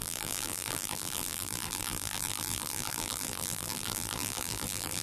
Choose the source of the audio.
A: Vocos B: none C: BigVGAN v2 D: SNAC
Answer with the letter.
C